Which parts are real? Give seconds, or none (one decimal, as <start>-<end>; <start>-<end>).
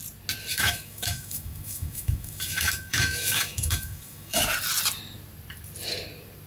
0.0-0.5; 4.4-6.5